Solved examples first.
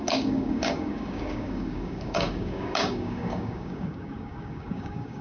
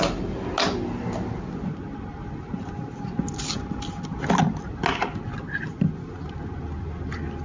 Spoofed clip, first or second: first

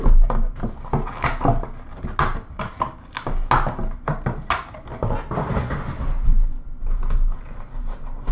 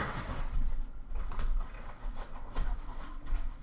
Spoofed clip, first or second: second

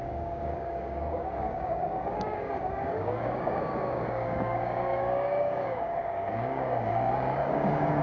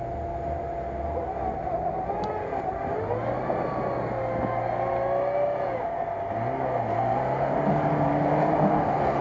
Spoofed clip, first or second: first